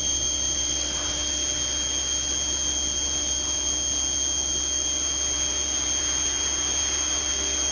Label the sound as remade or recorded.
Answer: recorded